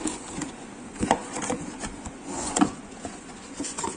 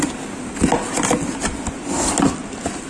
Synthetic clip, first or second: first